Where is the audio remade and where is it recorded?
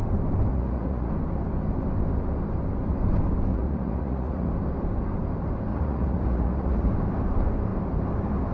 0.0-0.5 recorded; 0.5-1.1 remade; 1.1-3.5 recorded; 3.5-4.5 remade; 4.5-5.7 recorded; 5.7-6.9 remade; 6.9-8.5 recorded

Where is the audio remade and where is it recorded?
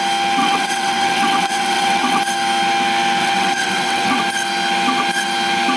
0.0-0.4 recorded; 0.4-2.2 remade; 2.2-3.2 recorded; 3.2-4.2 remade; 4.2-5.8 recorded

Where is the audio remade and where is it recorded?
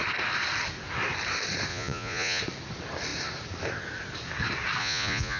0.0-1.7 recorded; 1.7-2.4 remade; 2.4-4.8 recorded; 4.8-5.4 remade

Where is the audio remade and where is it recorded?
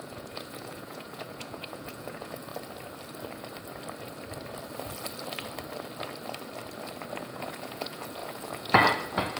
0.0-2.5 remade; 2.5-7.2 recorded; 7.2-9.4 remade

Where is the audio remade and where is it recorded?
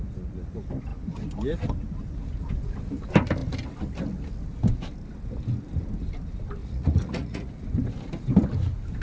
0.0-6.6 recorded; 6.6-7.5 remade; 7.5-9.0 recorded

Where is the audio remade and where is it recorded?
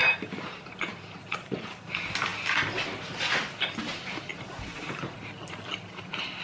0.0-1.9 remade; 1.9-4.3 recorded; 4.3-5.0 remade; 5.0-6.4 recorded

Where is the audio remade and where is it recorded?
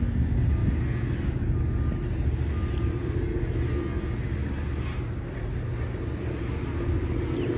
0.0-7.6 recorded